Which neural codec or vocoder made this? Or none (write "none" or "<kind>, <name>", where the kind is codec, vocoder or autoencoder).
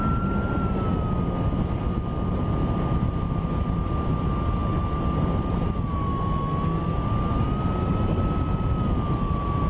none